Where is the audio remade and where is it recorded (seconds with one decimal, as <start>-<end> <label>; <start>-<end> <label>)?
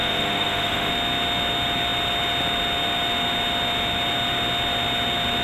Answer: 0.0-0.9 remade; 0.9-5.4 recorded